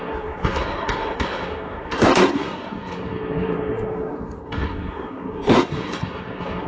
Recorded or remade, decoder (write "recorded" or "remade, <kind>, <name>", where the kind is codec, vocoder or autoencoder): remade, codec, SNAC